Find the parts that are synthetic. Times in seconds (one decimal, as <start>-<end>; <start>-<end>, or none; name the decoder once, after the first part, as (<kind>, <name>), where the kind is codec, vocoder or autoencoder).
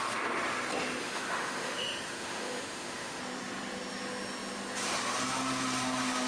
1.0-3.2 (autoencoder, DAC-VAE)